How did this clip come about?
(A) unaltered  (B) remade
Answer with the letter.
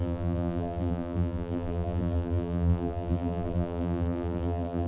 B